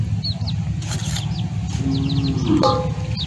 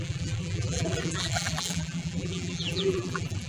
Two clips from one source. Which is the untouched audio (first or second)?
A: first